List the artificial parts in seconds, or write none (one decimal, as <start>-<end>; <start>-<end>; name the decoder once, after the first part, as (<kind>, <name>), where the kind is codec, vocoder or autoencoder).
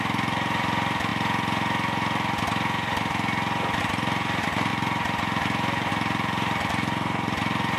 0.0-1.1 (vocoder, BigVGAN v2); 3.8-7.8